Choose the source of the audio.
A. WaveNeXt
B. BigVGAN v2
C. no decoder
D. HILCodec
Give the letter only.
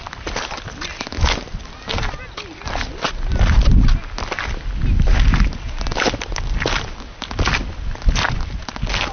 C